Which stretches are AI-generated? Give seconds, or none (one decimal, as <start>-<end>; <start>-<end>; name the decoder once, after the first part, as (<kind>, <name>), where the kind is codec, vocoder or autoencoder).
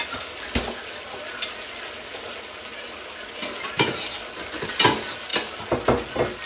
none